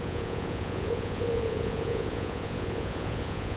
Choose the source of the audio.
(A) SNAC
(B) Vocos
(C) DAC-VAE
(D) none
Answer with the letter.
B